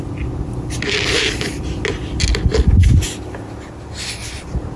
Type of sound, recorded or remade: recorded